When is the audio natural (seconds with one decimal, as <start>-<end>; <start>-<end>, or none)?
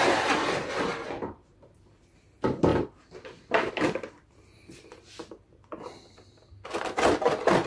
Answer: 0.0-0.9; 2.1-4.5